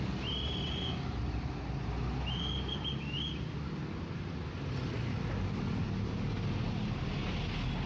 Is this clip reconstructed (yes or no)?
no